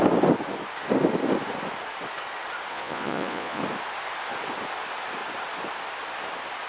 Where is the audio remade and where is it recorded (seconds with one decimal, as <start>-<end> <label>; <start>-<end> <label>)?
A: 0.0-2.7 recorded; 2.7-3.6 remade; 3.6-6.7 recorded